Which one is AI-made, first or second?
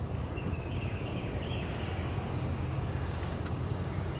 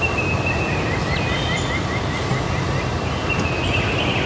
first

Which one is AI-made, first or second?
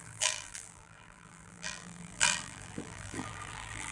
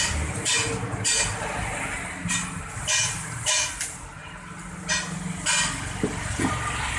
first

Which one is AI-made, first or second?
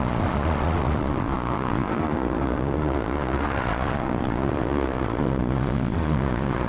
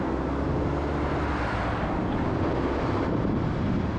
first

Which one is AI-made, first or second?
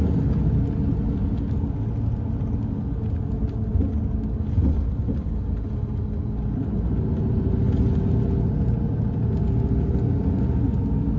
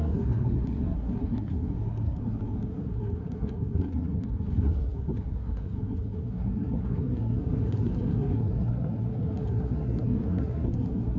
second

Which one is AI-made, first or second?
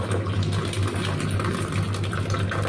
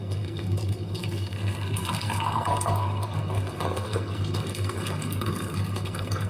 second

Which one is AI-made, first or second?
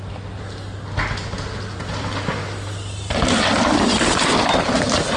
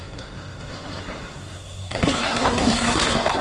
second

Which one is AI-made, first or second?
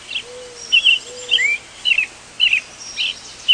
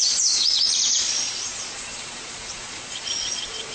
second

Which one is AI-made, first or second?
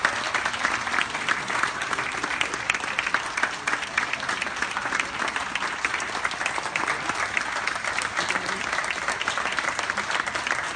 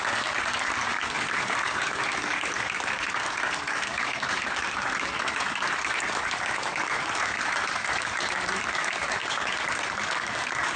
second